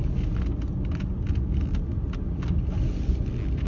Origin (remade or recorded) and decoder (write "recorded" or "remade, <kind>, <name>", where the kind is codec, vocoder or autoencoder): recorded